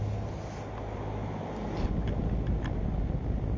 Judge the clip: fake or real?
real